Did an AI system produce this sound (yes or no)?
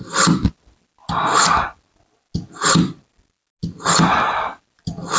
no